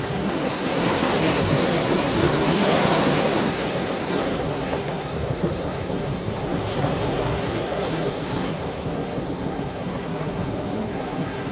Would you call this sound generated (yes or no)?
yes